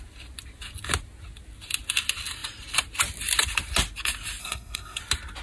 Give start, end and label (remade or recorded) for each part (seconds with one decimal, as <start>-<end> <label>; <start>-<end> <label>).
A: 0.0-4.4 recorded; 4.4-5.0 remade; 5.0-5.4 recorded